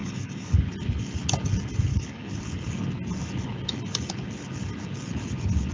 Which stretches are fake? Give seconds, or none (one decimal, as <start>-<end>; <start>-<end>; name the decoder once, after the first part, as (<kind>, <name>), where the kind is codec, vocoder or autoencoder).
0.0-0.6 (codec, DAC); 1.9-2.4